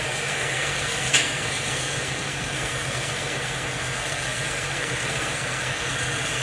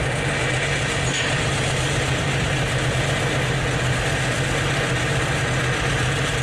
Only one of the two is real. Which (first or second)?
second